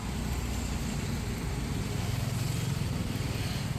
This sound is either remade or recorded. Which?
recorded